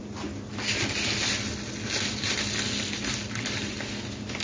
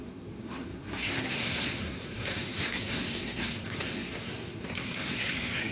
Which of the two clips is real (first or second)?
first